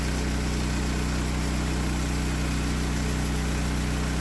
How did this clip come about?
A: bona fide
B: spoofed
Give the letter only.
A